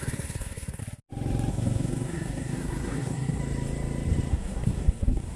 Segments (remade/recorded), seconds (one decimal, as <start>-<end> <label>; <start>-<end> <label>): 0.0-0.8 remade; 0.8-1.5 recorded; 1.5-3.4 remade; 3.4-4.3 recorded; 4.3-5.4 remade